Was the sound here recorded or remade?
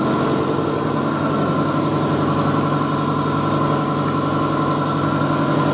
recorded